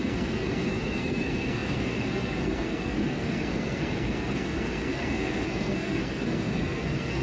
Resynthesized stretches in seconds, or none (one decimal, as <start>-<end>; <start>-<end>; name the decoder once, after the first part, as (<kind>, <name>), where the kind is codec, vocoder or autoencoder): 0.0-7.2 (codec, SNAC)